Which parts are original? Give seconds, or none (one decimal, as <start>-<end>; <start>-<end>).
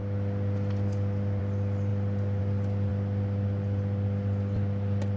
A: 0.0-5.2